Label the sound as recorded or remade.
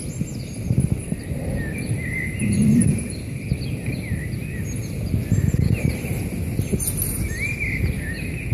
recorded